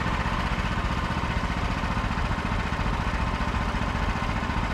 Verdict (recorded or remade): recorded